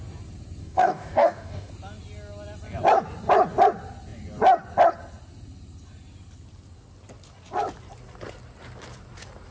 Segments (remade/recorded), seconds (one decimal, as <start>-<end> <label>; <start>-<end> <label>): 0.0-0.6 recorded; 0.6-1.7 remade; 1.7-9.5 recorded